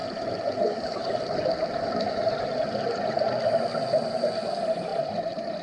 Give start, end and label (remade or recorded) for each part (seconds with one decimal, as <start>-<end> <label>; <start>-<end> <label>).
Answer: 0.0-4.9 recorded; 4.9-5.6 remade